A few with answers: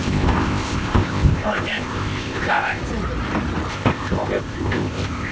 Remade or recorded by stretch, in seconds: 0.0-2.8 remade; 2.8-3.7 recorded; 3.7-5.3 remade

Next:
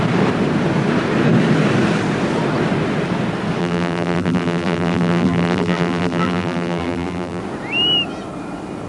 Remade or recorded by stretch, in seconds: 0.0-3.6 recorded; 3.6-7.4 remade; 7.4-8.9 recorded

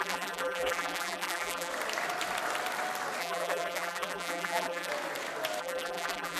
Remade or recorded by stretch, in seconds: 0.0-1.7 remade; 1.7-3.2 recorded; 3.2-4.9 remade; 4.9-5.6 recorded; 5.6-6.4 remade

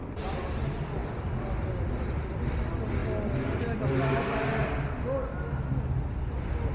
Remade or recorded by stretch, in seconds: 0.0-6.7 recorded

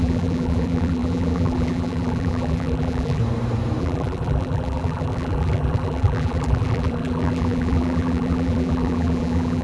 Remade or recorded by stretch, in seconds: 0.0-3.2 remade; 3.2-3.8 recorded; 3.8-9.6 remade

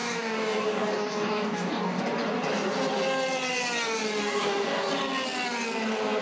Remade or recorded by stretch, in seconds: 0.0-2.0 remade; 2.0-4.2 recorded; 4.2-4.9 remade; 4.9-6.2 recorded

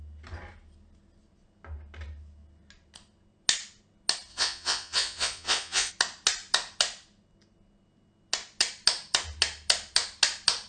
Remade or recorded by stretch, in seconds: 0.0-4.3 recorded; 4.3-5.9 remade; 5.9-10.7 recorded